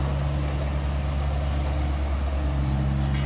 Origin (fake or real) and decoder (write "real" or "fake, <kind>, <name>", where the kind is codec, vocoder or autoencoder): real